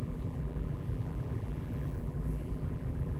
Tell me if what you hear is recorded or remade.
remade